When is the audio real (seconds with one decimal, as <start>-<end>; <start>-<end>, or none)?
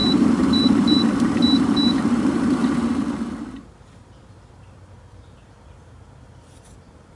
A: 2.6-4.5